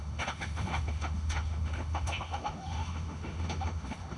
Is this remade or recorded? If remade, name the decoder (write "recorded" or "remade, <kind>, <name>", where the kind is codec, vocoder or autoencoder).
remade, autoencoder, DAC-VAE